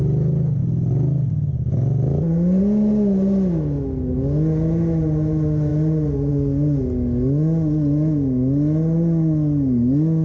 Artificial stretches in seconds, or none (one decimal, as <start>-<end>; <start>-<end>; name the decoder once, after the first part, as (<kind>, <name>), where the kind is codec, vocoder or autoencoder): none